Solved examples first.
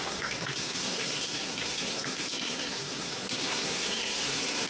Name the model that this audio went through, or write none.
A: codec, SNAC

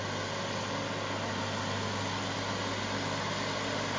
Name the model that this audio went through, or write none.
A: none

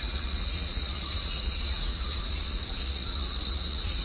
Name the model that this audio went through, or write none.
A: vocoder, Vocos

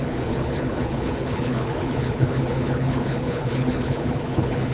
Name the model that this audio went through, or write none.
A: codec, HILCodec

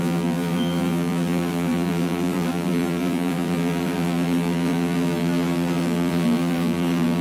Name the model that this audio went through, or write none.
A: vocoder, BigVGAN v2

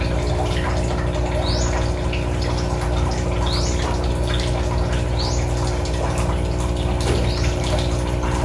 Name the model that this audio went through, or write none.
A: none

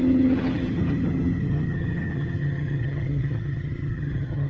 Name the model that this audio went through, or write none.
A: vocoder, HiFi-GAN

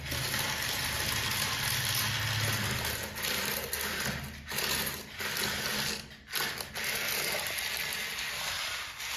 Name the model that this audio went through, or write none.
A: none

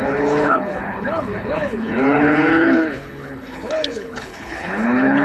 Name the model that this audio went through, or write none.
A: codec, HILCodec